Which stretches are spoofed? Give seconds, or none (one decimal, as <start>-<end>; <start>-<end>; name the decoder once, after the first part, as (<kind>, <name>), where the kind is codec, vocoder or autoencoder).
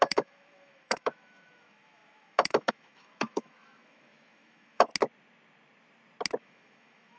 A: 0.0-4.9 (autoencoder, DAC-VAE); 6.4-7.2